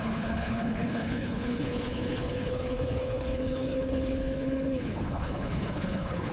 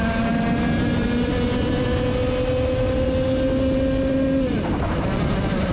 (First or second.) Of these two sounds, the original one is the second